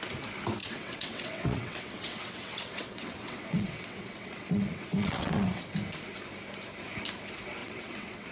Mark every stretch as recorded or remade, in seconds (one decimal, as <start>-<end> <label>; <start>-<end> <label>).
0.0-0.6 recorded; 0.6-5.6 remade; 5.6-7.6 recorded; 7.6-8.3 remade